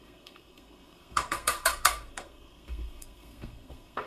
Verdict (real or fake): fake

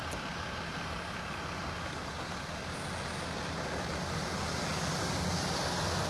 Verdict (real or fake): real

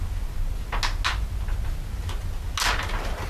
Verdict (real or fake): real